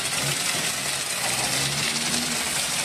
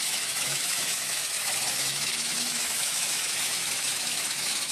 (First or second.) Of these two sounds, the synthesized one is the second